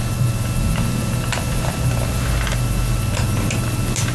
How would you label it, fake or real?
real